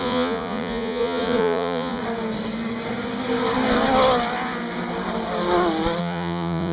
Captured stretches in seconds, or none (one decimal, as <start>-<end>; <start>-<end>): 2.0-6.0